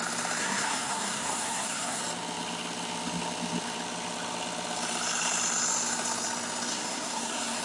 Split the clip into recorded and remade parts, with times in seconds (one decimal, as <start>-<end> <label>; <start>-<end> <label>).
0.0-0.4 recorded; 0.4-2.0 remade; 2.0-6.7 recorded; 6.7-7.6 remade